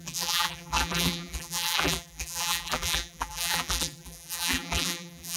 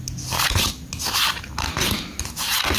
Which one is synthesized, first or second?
first